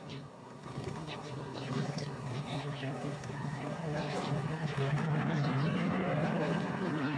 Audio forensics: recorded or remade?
remade